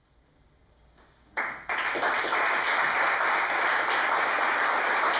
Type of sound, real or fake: real